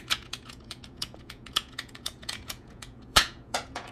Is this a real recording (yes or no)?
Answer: no